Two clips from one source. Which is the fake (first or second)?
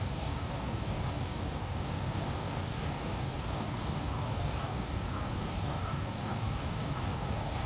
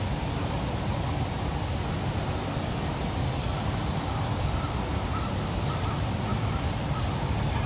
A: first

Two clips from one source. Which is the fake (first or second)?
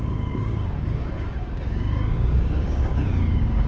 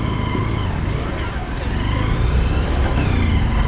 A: first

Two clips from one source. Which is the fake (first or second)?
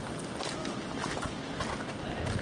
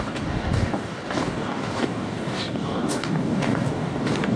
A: second